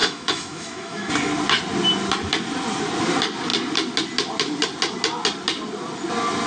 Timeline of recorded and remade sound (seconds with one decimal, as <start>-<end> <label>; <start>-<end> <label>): 0.0-1.1 remade; 1.1-6.5 recorded